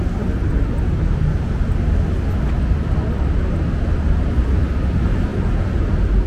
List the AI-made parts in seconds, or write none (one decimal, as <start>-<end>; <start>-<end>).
5.3-6.3